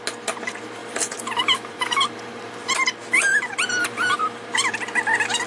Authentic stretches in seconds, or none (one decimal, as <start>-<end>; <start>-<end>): 0.0-0.8; 2.4-3.3; 4.8-5.5